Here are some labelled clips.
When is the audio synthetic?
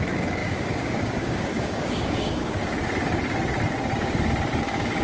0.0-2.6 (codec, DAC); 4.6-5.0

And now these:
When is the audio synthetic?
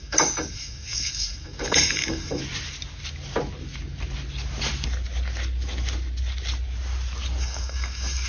0.0-2.4 (codec, DAC); 7.4-8.3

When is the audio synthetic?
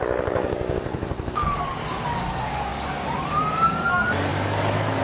0.0-5.0 (codec, DAC)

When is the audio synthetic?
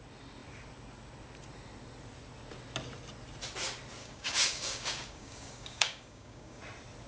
4.0-6.6 (codec, DAC)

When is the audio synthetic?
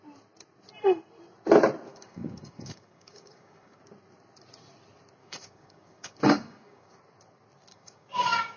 1.9-3.8 (codec, DAC); 5.2-7.0; 7.7-8.6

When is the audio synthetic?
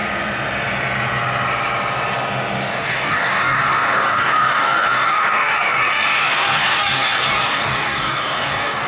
2.7-8.9 (codec, DAC)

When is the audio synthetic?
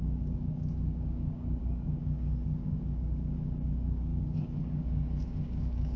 0.0-6.0 (codec, DAC)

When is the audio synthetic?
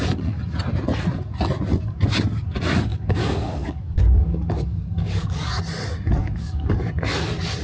2.9-5.6 (codec, DAC); 6.2-6.7